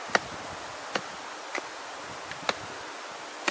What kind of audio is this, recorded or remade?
recorded